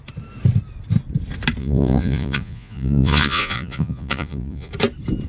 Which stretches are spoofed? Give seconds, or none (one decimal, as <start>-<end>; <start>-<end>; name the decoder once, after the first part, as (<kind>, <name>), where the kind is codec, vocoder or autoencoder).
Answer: 1.6-4.7 (vocoder, Vocos)